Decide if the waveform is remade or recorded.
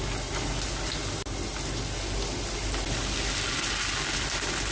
recorded